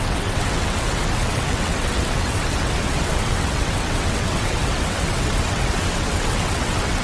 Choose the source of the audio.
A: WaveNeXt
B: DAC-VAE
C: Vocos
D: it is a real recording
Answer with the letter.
A